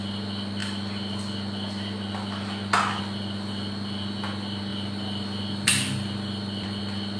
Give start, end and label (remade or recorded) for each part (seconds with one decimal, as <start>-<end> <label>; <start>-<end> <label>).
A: 0.0-4.7 recorded; 4.7-6.8 remade; 6.8-7.2 recorded